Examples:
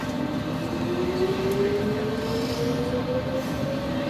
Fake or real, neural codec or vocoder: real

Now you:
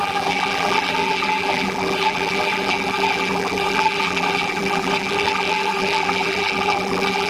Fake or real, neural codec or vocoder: fake, vocoder, BigVGAN v2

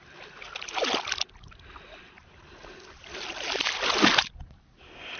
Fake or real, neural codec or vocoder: real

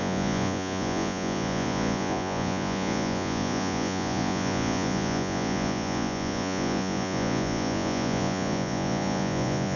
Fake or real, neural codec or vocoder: fake, vocoder, Vocos